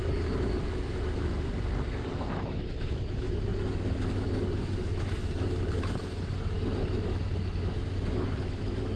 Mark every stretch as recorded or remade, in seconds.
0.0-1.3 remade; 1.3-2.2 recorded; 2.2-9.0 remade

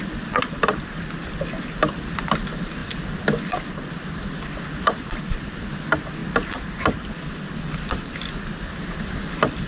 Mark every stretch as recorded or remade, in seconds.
0.0-9.7 recorded

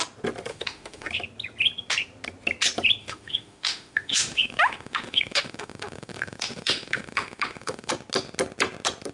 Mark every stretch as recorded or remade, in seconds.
0.0-0.5 recorded; 0.5-1.1 remade; 1.1-3.0 recorded; 3.0-7.9 remade; 7.9-9.1 recorded

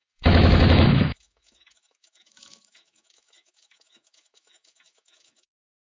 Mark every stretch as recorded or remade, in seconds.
0.0-5.9 remade

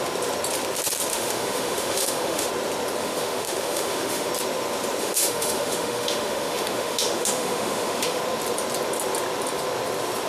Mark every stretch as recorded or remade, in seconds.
0.0-1.1 recorded; 1.1-2.5 remade; 2.5-3.0 recorded; 3.0-4.3 remade; 4.3-5.0 recorded; 5.0-8.2 remade; 8.2-10.3 recorded

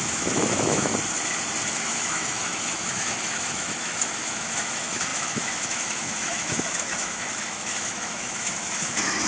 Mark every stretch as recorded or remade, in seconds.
0.0-0.9 remade; 0.9-1.7 recorded; 1.7-9.3 remade